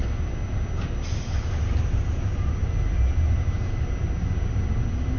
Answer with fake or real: real